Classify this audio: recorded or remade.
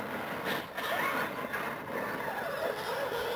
recorded